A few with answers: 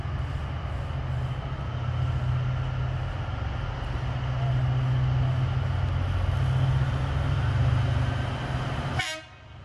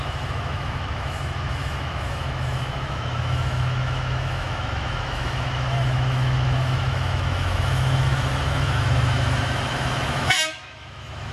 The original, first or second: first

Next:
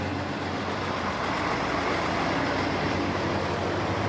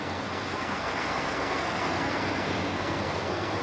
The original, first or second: first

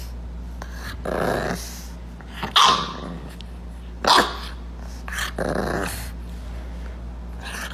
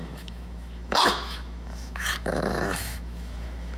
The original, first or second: first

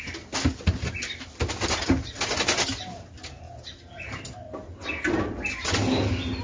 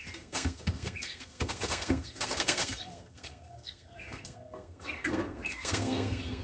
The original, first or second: first